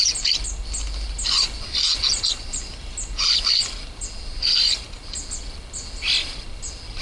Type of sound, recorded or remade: recorded